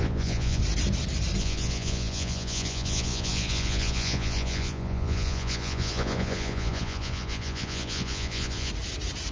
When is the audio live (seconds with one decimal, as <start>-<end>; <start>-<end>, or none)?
0.6-1.4; 8.7-9.3

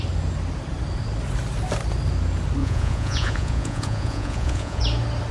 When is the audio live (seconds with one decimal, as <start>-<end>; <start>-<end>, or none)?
0.0-2.6; 4.8-5.3

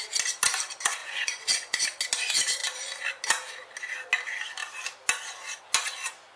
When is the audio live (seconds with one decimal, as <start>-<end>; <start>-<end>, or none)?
0.0-1.0; 1.8-6.4

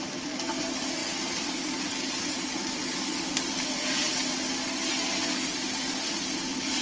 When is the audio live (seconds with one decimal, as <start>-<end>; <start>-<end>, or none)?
0.0-6.8